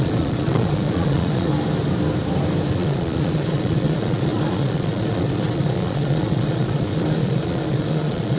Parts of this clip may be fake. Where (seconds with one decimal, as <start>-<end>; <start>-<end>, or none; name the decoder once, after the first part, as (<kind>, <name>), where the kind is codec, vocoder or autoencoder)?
0.0-1.5 (vocoder, Vocos); 2.7-8.4

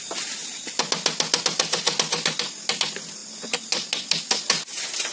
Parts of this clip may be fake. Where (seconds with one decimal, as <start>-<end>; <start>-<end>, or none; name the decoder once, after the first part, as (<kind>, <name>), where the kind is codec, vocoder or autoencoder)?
none

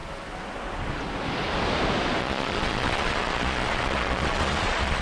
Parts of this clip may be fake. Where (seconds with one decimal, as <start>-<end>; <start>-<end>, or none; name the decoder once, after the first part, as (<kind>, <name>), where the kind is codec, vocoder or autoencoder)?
2.2-5.0 (vocoder, Vocos)